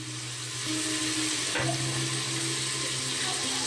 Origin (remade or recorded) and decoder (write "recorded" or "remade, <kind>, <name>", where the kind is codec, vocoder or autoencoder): recorded